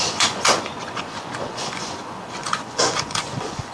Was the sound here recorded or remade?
remade